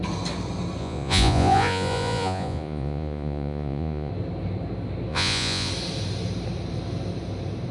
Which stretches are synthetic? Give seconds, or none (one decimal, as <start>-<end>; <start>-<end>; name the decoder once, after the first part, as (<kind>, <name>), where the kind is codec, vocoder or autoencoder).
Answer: 0.8-4.1 (vocoder, Vocos); 5.1-5.7